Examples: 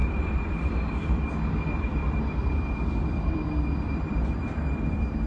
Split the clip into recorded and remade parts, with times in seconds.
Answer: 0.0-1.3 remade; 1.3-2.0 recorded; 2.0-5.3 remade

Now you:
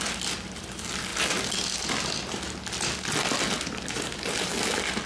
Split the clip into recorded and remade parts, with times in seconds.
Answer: 0.0-1.1 recorded; 1.1-2.0 remade; 2.0-5.1 recorded

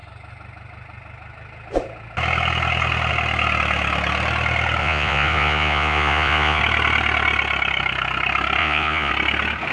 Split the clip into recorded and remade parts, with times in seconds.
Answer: 0.0-4.8 recorded; 4.8-6.6 remade; 6.6-8.6 recorded; 8.6-9.1 remade; 9.1-9.7 recorded

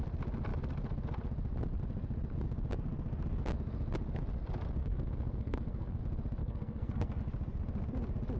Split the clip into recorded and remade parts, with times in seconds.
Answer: 0.0-4.8 recorded; 4.8-6.0 remade; 6.0-6.4 recorded; 6.4-7.2 remade; 7.2-8.4 recorded

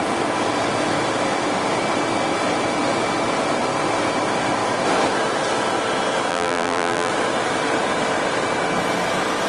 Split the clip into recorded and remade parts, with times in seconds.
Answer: 0.0-6.3 recorded; 6.3-7.1 remade; 7.1-9.5 recorded